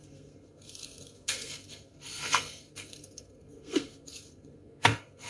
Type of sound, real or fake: fake